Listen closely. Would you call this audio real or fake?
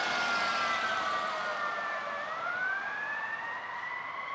fake